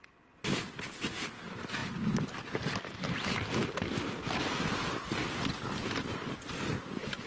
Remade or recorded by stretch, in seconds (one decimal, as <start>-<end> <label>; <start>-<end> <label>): 0.0-7.3 recorded